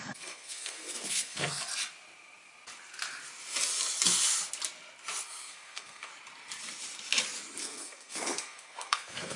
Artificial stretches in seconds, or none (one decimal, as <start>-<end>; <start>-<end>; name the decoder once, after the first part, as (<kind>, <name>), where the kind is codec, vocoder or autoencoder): 0.0-1.7 (codec, SNAC); 5.4-6.1; 7.6-9.4